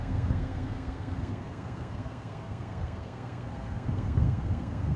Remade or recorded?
remade